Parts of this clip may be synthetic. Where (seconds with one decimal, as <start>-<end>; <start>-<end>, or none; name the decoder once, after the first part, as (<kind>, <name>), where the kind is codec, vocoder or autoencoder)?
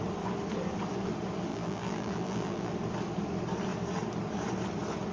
1.5-2.7 (vocoder, BigVGAN v2)